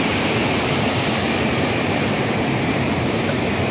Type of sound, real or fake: fake